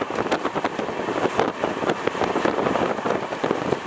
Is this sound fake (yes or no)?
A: no